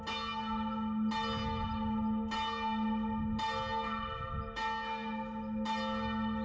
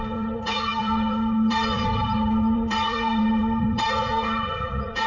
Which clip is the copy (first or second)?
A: second